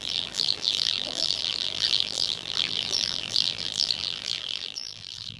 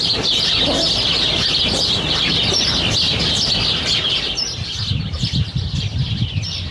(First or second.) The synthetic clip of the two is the first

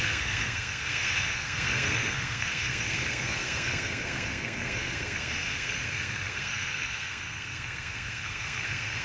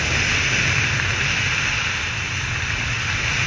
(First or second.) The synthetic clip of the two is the first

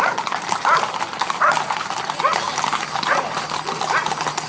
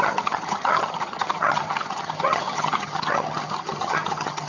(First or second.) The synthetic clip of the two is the second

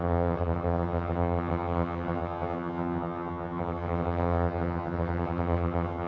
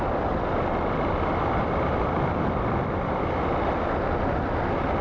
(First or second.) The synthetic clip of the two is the first